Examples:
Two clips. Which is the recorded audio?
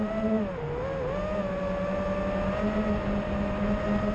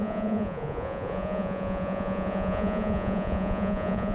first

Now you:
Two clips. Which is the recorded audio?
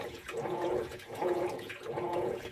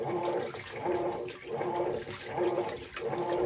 second